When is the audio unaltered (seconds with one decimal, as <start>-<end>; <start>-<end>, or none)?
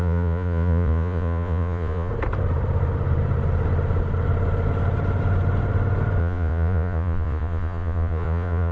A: 2.1-6.2